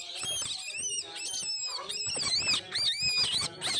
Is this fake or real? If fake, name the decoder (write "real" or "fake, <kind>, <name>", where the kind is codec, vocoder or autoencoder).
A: real